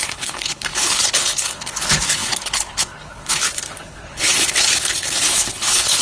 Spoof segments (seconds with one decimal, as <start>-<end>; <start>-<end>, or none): 0.0-6.0